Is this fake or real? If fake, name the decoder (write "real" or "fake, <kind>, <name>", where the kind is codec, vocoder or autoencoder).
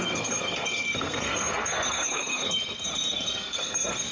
fake, codec, SNAC